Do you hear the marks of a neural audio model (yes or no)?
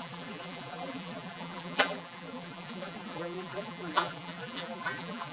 yes